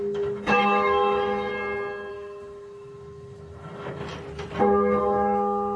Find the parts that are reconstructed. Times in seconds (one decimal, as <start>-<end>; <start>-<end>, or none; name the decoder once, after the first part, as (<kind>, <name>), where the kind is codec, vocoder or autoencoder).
0.0-1.5 (autoencoder, DAC-VAE); 2.1-4.0; 4.6-5.8